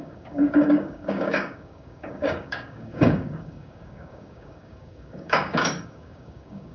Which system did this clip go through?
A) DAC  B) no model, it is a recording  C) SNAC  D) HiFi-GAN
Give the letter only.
A